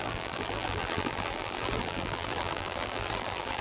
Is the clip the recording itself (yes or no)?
no